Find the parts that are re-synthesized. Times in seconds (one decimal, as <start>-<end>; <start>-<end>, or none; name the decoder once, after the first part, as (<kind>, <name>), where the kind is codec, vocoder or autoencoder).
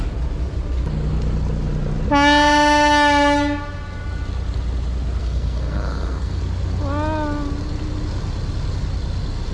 5.2-6.4 (codec, SNAC)